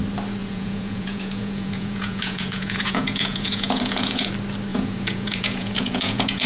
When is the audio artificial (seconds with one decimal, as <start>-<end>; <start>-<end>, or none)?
0.4-4.3; 4.7-6.5